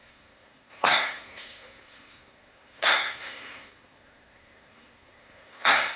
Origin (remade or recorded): remade